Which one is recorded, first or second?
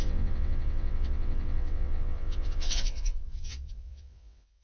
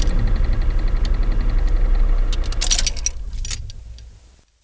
second